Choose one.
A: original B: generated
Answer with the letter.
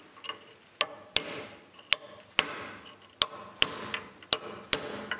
A